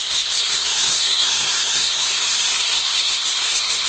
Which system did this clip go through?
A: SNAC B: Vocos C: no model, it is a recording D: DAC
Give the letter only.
A